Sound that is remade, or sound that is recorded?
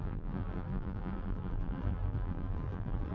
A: remade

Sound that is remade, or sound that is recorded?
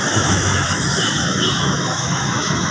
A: remade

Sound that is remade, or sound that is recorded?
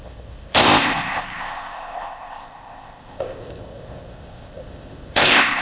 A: remade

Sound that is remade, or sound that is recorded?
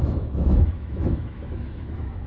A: remade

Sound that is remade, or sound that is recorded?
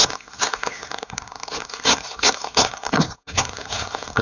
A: remade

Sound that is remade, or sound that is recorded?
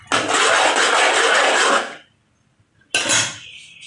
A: recorded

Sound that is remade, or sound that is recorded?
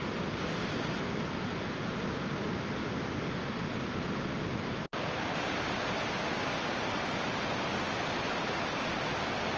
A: recorded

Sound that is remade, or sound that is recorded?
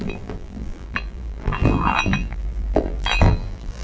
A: remade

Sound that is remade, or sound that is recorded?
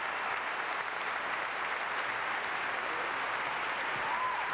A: recorded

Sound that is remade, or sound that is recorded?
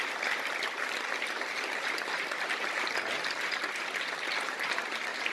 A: recorded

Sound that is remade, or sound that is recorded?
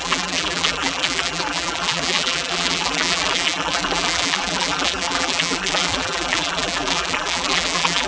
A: remade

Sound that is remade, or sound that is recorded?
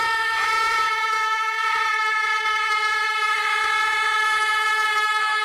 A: remade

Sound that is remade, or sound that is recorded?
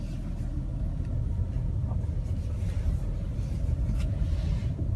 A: recorded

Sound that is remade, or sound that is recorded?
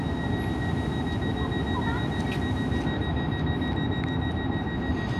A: recorded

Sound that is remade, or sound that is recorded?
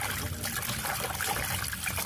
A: recorded